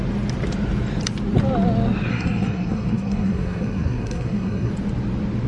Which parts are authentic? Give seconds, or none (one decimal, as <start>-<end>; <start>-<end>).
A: 0.0-2.1; 4.7-5.5